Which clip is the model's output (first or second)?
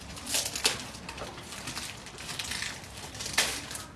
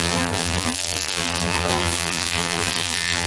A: second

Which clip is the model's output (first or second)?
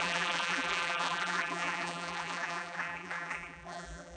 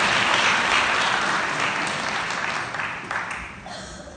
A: first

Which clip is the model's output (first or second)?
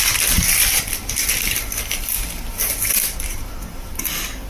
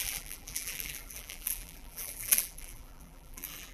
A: second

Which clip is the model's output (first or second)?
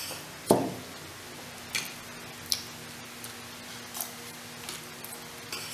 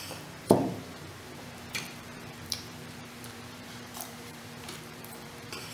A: second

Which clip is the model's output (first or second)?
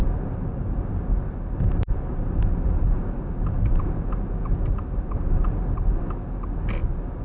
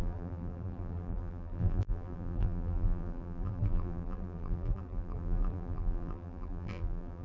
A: second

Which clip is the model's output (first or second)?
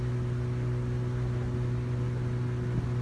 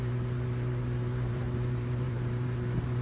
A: second